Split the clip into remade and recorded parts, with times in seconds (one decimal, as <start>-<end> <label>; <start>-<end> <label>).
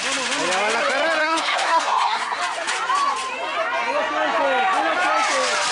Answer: 0.0-1.2 recorded; 1.2-2.4 remade; 2.4-5.7 recorded